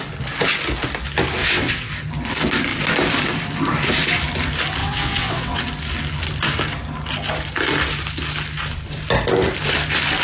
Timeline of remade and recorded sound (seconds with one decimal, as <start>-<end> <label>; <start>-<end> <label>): 0.0-1.4 recorded; 1.4-1.9 remade; 1.9-4.8 recorded; 4.8-5.6 remade; 5.6-10.2 recorded